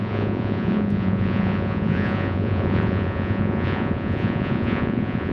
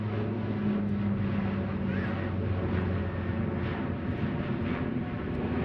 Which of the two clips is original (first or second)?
second